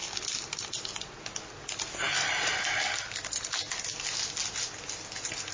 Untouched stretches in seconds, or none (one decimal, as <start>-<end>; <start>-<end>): 0.0-5.5